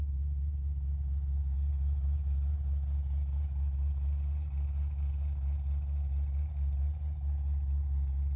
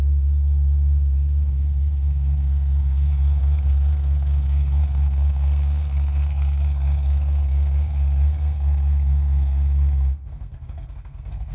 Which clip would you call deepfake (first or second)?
second